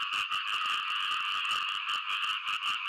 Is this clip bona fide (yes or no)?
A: yes